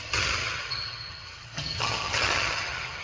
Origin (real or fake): fake